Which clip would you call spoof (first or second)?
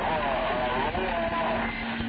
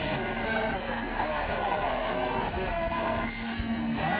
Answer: second